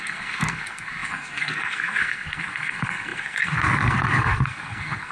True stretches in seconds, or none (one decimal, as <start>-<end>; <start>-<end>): none